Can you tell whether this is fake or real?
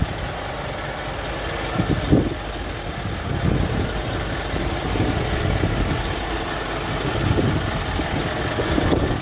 real